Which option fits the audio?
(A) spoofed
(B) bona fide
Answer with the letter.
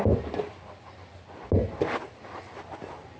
B